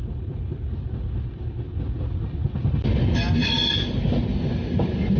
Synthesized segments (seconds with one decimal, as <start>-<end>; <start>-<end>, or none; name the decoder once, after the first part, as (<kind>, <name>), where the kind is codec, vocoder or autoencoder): none